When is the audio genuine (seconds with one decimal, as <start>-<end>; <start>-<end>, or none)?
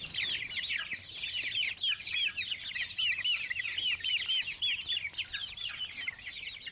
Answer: 0.0-6.7